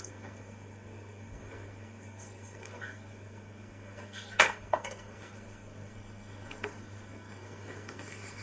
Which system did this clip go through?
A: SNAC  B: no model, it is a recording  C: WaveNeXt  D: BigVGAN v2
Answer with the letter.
A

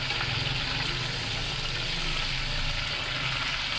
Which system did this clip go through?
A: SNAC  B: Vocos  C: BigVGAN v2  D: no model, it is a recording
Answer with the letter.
D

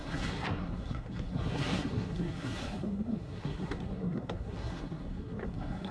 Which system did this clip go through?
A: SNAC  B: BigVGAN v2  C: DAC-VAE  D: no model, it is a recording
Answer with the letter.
A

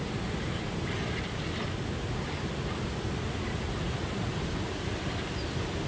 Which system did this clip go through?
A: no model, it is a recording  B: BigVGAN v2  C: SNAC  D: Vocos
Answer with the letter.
A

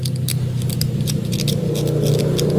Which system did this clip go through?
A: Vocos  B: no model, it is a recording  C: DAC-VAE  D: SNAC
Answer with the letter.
B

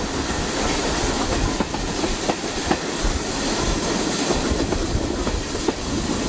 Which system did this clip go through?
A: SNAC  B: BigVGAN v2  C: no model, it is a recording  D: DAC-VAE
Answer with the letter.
C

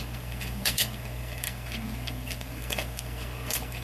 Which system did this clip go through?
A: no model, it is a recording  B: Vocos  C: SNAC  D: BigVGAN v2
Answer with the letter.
C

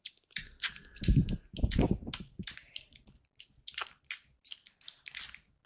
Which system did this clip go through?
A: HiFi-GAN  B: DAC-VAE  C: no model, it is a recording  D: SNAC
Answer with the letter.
C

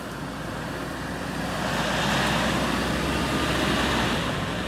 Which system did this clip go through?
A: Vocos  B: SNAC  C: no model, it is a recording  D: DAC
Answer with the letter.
C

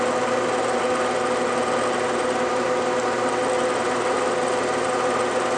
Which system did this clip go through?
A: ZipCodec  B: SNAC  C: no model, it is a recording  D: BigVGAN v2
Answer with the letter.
C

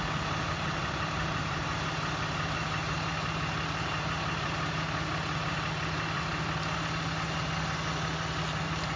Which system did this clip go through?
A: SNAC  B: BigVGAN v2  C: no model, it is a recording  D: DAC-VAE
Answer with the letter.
C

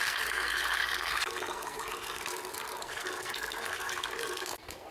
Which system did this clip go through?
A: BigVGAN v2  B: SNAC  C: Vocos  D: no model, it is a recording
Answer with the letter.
B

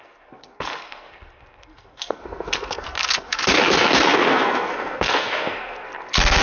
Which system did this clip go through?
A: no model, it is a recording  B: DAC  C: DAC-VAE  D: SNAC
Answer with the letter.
D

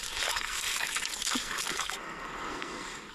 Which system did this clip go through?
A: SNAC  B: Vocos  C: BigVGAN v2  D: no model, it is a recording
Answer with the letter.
A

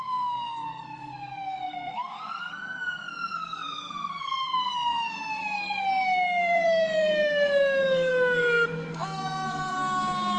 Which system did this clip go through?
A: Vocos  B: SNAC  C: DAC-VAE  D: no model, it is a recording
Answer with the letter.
B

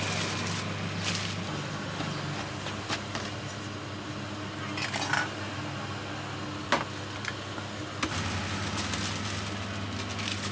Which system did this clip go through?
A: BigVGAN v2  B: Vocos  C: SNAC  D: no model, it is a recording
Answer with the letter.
D